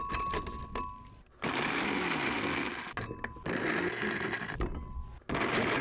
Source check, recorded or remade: recorded